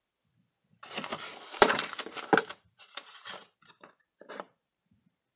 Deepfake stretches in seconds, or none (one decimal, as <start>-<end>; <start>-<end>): 1.1-4.3